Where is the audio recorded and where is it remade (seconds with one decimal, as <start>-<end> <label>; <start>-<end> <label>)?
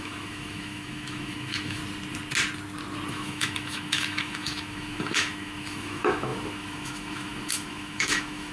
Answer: 0.0-1.8 remade; 1.8-3.1 recorded; 3.1-8.5 remade